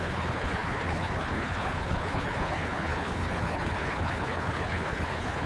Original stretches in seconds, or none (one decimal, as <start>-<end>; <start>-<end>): none